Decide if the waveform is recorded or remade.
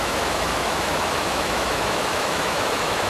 remade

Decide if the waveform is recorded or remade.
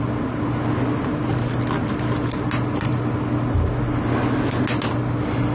recorded